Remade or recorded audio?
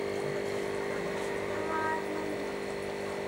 recorded